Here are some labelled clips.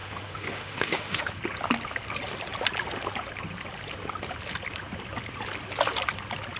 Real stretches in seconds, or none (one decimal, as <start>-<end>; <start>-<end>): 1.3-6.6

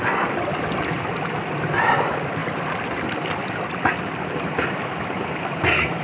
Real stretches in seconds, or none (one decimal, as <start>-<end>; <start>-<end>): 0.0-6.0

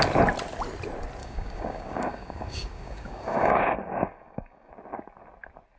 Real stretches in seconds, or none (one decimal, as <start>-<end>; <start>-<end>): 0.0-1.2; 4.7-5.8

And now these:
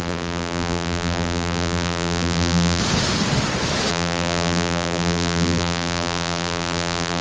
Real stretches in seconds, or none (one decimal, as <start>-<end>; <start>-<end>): 2.8-3.9

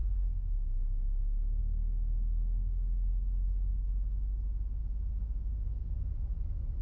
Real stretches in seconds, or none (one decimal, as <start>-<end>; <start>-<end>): 0.0-6.8